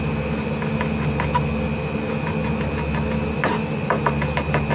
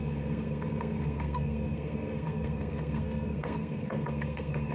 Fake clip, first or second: second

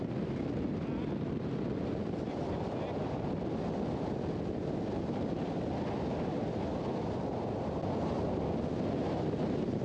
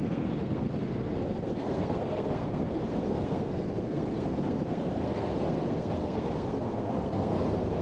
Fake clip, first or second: second